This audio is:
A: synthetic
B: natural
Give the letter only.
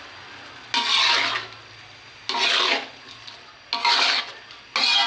B